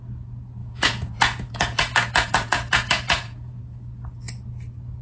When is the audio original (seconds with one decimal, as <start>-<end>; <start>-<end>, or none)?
0.0-0.6; 3.6-5.0